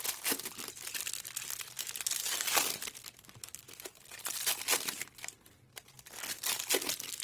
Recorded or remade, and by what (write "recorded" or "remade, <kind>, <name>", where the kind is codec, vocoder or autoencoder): recorded